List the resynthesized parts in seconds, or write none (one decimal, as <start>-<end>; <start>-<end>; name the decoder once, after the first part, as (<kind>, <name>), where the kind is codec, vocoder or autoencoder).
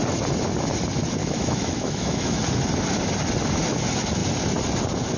1.2-2.4 (autoencoder, DAC-VAE)